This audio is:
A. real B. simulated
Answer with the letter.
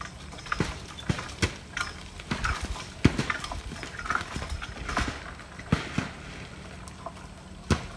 A